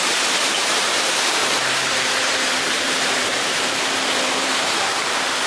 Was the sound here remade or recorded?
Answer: remade